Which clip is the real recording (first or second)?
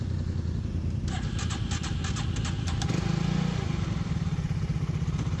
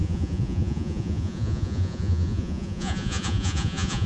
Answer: first